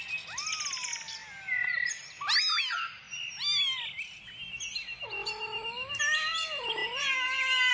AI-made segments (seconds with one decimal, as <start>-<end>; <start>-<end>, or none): none